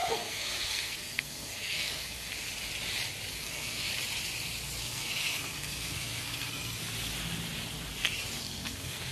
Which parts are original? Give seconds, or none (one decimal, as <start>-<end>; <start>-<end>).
2.3-3.3; 3.9-4.8; 6.8-8.4